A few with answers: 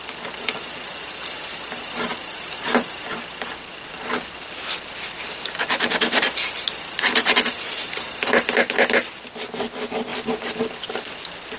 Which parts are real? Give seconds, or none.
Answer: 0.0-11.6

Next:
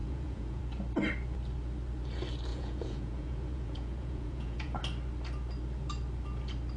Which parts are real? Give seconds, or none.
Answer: 0.6-2.5; 4.8-6.8

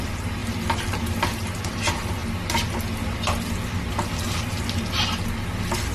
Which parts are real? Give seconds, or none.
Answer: 0.0-5.9

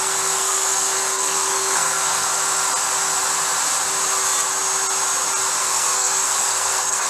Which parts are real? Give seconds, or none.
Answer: 2.3-5.6

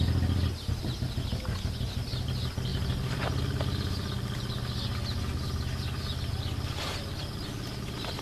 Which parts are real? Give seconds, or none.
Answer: 0.0-8.2

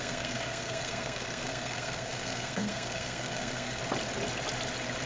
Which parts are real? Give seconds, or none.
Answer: 3.8-5.1

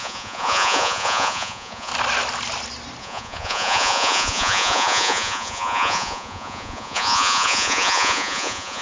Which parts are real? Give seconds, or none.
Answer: 1.9-3.0